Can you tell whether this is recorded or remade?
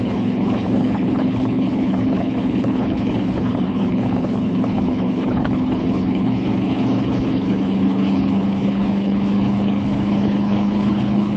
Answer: remade